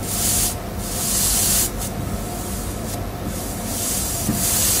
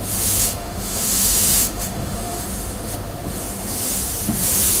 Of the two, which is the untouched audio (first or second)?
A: first